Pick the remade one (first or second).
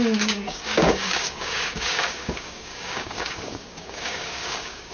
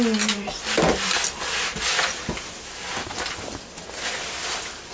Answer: first